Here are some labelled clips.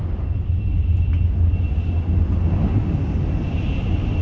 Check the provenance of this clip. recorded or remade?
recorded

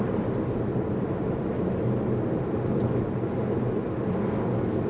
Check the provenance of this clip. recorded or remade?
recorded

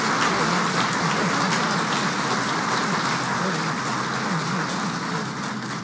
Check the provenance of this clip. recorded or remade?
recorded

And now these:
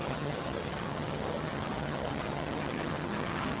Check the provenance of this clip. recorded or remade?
remade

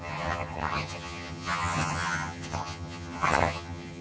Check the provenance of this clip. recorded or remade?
remade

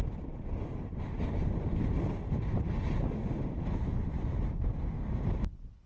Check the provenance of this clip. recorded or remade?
recorded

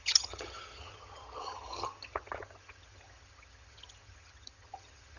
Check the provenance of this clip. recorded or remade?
remade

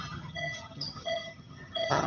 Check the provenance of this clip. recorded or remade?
remade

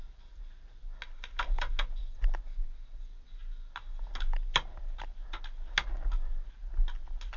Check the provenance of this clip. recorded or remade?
recorded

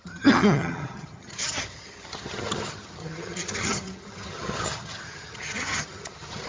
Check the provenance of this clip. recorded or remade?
remade